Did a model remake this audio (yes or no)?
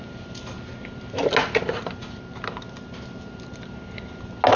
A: no